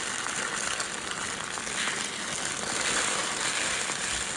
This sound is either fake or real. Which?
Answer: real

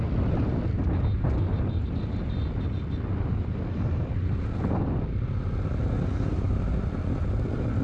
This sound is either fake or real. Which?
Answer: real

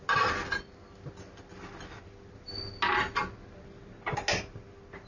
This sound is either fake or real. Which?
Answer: real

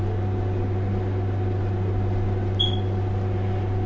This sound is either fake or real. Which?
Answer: real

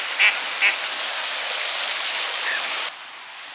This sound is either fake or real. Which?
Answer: real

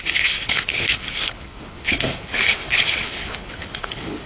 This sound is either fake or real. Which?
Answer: fake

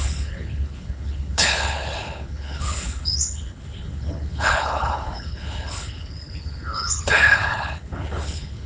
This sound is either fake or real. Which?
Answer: fake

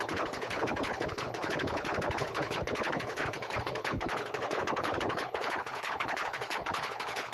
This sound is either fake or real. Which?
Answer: fake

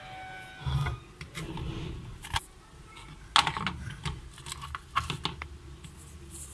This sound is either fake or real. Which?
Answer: real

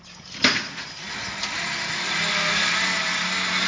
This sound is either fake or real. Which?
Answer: real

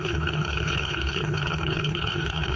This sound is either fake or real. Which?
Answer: fake